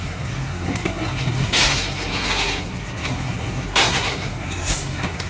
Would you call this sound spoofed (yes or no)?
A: yes